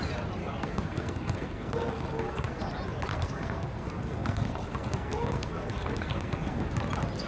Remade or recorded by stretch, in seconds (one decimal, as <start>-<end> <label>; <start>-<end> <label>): 0.0-0.4 recorded; 0.4-2.6 remade; 2.6-3.1 recorded; 3.1-6.7 remade; 6.7-7.3 recorded

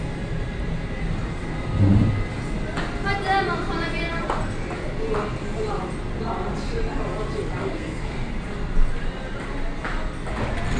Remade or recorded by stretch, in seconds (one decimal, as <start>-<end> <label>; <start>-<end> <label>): 0.0-7.6 recorded; 7.6-8.3 remade; 8.3-10.8 recorded